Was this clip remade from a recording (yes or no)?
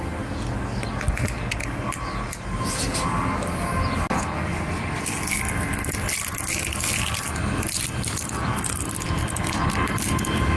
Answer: no